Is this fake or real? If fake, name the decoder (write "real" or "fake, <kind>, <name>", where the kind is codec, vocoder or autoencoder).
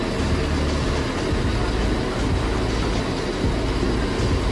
real